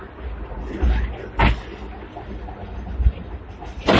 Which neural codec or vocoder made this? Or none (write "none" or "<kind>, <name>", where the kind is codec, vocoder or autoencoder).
none